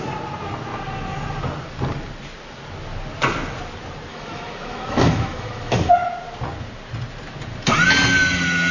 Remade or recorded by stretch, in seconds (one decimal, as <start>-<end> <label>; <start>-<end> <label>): 0.0-4.1 recorded; 4.1-5.9 remade; 5.9-8.7 recorded